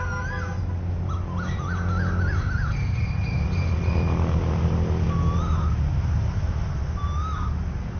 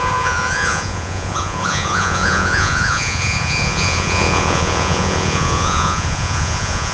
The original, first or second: first